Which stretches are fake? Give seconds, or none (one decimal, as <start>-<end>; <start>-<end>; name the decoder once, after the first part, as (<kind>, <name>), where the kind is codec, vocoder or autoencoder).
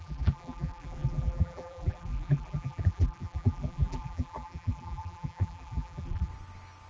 0.0-6.3 (vocoder, BigVGAN v2)